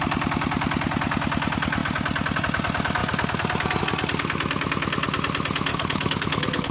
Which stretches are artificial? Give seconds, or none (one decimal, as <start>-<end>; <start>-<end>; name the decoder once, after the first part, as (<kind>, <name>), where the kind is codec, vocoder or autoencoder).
5.7-6.7 (codec, HILCodec)